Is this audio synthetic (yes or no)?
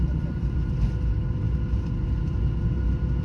no